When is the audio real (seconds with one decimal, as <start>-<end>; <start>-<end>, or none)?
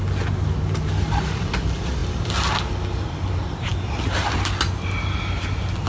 0.0-5.9